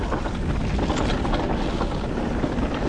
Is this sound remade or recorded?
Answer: recorded